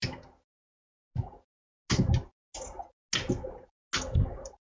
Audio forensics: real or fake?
real